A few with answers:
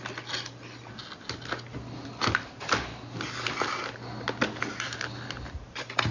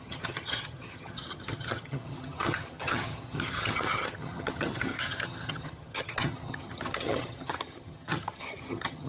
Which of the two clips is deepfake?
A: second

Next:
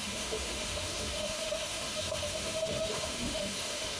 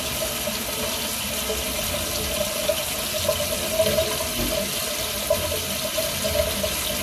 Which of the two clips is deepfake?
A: first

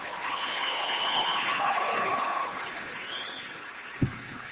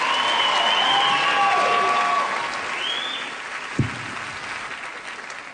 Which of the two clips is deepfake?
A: first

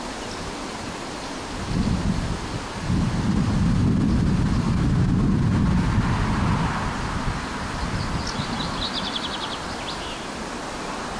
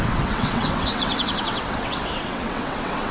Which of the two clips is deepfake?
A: second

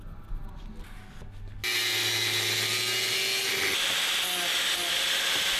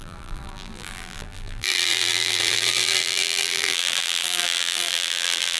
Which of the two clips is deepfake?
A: second